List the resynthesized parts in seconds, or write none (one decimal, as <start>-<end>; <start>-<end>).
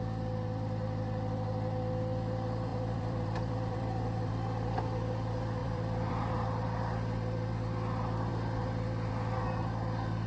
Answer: 2.7-4.3; 5.6-6.1